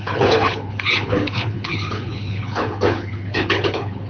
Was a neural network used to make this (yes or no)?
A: yes